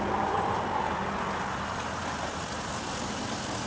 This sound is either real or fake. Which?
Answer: real